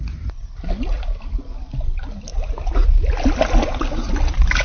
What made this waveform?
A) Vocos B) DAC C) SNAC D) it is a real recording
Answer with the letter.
D